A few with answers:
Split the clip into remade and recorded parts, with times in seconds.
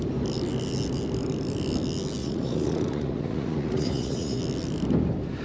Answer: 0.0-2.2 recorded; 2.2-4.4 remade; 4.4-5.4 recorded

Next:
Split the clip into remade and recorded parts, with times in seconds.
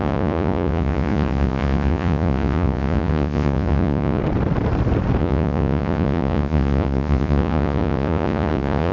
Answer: 0.0-4.2 remade; 4.2-5.2 recorded; 5.2-8.9 remade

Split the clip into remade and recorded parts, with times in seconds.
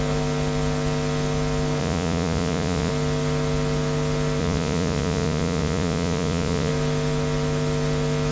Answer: 0.0-1.8 recorded; 1.8-2.9 remade; 2.9-4.4 recorded; 4.4-6.7 remade; 6.7-8.3 recorded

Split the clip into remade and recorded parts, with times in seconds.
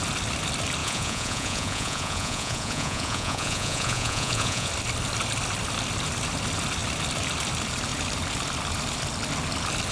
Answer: 0.0-0.8 recorded; 0.8-4.7 remade; 4.7-9.9 recorded